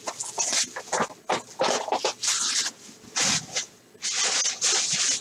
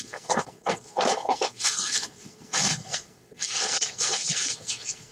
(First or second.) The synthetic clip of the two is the second